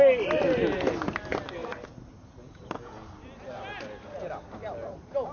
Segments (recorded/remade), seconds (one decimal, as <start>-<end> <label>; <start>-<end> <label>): 0.0-5.3 recorded